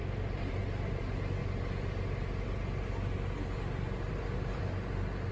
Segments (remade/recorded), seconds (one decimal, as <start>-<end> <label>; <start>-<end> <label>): 0.0-5.3 recorded